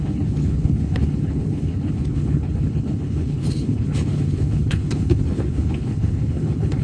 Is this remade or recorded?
remade